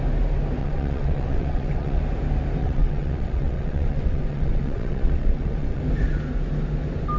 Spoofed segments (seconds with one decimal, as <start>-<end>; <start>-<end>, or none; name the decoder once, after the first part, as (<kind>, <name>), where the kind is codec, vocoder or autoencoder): 0.6-2.0 (vocoder, WaveNeXt); 2.6-5.8